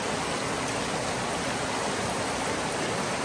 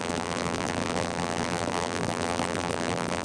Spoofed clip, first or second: second